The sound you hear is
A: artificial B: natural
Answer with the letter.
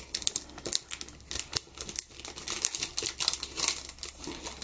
B